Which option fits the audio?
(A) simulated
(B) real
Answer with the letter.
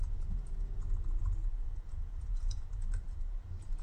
A